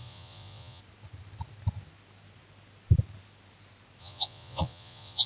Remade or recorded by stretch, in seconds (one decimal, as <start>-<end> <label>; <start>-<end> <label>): 0.0-0.8 remade; 0.8-4.0 recorded; 4.0-5.3 remade